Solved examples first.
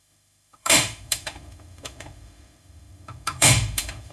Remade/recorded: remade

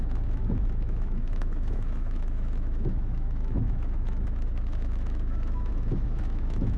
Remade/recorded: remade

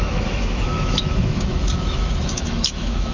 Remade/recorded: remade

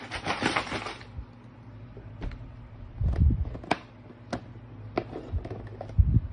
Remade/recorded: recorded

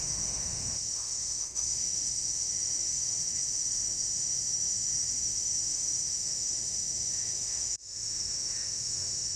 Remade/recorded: remade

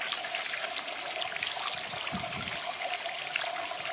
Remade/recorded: recorded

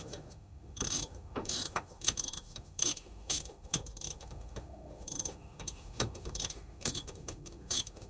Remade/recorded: remade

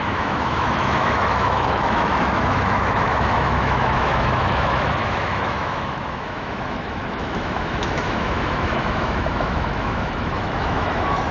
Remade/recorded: remade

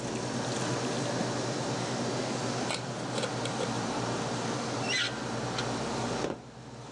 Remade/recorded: recorded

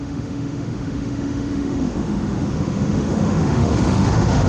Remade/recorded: remade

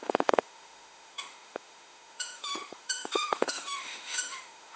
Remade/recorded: remade